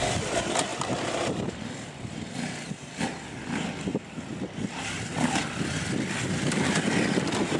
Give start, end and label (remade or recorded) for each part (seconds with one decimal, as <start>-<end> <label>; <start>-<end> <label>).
0.0-7.6 recorded